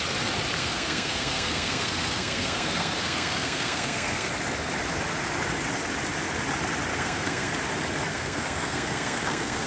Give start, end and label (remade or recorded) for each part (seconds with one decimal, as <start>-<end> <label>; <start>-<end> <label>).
0.0-0.6 recorded; 0.6-4.3 remade; 4.3-6.9 recorded; 6.9-7.5 remade; 7.5-8.1 recorded; 8.1-9.7 remade